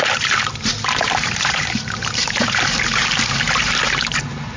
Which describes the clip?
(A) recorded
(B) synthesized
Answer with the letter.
B